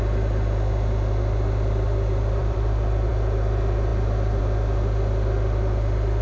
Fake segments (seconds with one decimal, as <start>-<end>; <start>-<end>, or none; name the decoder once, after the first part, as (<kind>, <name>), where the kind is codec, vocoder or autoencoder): 2.4-3.1 (vocoder, BigVGAN v2)